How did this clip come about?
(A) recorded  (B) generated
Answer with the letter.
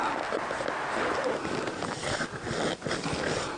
A